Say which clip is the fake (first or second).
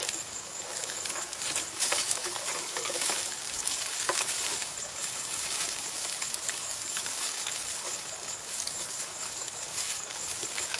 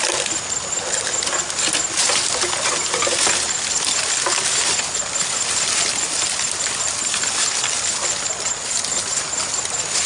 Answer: first